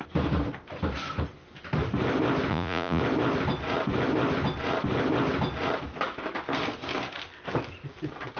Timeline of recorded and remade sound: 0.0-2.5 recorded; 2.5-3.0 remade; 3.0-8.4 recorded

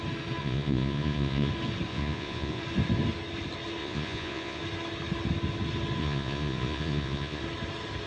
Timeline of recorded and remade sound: 0.0-0.4 recorded; 0.4-1.5 remade; 1.5-1.9 recorded; 1.9-2.6 remade; 2.6-3.8 recorded; 3.8-4.6 remade; 4.6-6.0 recorded; 6.0-7.4 remade; 7.4-8.1 recorded

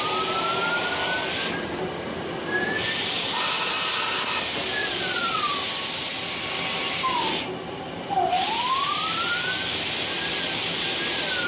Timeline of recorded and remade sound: 0.0-4.8 recorded; 4.8-5.4 remade; 5.4-11.5 recorded

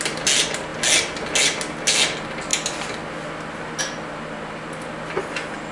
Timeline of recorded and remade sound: 0.0-5.7 recorded